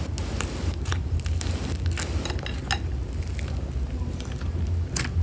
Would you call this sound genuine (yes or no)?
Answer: yes